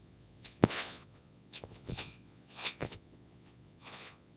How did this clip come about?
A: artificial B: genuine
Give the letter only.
A